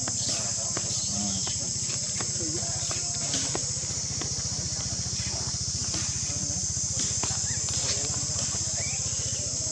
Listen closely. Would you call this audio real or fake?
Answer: real